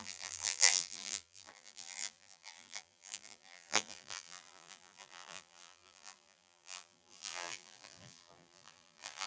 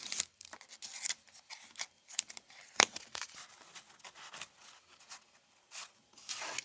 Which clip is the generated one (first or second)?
first